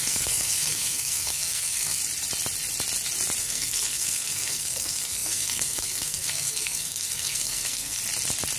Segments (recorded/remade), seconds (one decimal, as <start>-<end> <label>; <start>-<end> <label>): 0.0-2.0 remade; 2.0-3.4 recorded; 3.4-8.0 remade; 8.0-8.6 recorded